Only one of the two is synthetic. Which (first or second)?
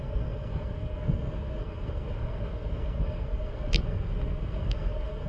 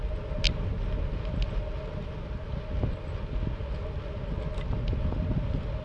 first